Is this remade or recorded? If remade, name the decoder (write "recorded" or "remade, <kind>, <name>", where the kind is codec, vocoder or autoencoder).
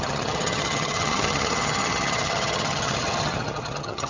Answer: remade, vocoder, HiFi-GAN